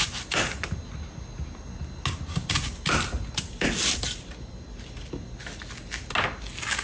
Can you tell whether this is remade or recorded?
recorded